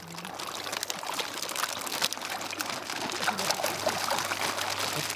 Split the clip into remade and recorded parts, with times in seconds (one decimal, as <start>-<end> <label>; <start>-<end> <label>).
0.0-5.2 recorded